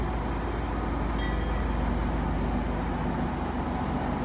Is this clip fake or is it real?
real